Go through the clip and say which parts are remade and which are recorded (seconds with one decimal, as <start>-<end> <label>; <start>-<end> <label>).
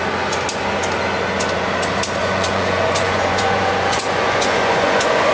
0.0-2.2 recorded; 2.2-5.3 remade